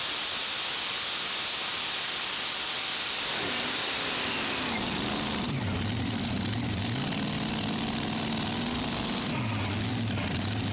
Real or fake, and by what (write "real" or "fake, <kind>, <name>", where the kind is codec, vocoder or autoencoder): fake, vocoder, BigVGAN v2